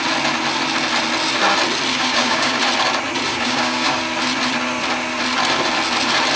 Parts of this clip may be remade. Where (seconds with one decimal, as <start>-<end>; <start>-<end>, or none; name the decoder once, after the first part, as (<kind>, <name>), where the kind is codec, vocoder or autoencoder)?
1.9-2.6 (codec, DAC); 3.3-4.0